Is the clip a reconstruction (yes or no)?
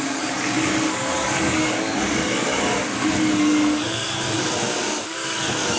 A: yes